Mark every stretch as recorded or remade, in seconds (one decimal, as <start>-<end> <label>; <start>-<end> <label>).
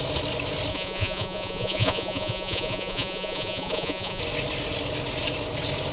0.0-0.7 recorded; 0.7-4.2 remade; 4.2-5.9 recorded